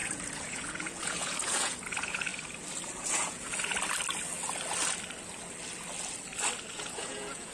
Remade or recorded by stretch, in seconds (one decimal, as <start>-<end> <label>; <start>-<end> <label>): 0.0-2.3 remade; 2.3-3.0 recorded; 3.0-3.7 remade; 3.7-6.7 recorded; 6.7-7.5 remade